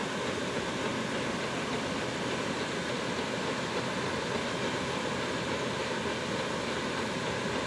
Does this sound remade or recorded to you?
recorded